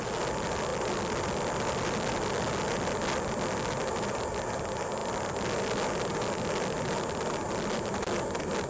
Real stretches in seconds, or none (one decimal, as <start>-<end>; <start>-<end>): 0.0-8.7